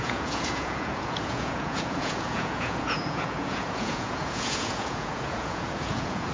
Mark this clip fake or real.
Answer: fake